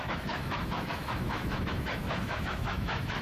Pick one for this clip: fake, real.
fake